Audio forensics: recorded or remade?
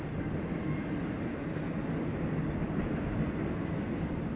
recorded